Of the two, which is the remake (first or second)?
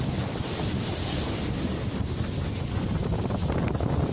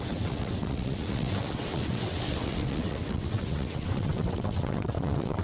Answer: second